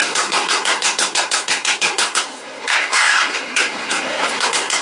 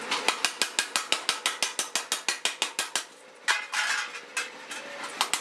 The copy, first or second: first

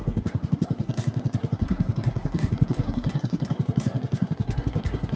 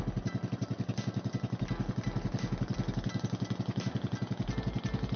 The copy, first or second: first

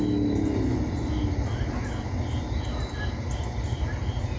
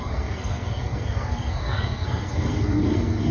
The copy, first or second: second